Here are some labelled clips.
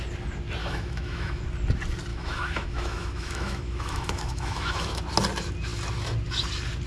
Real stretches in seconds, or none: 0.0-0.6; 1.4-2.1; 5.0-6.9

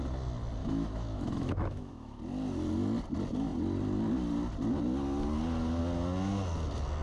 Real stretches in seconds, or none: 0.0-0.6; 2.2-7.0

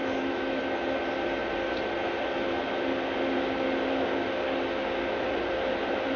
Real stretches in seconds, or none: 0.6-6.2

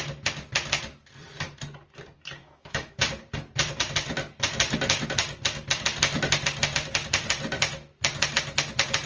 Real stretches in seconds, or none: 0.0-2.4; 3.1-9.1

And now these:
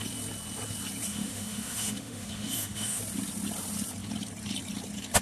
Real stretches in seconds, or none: 0.0-1.1; 3.0-5.2

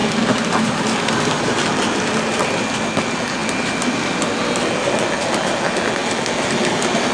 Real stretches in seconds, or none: 0.0-7.1

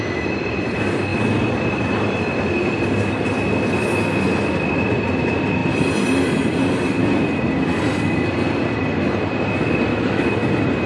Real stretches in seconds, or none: 0.0-9.9; 10.5-10.9

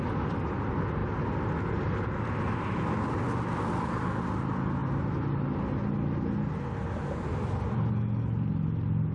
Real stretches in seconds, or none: 0.0-9.1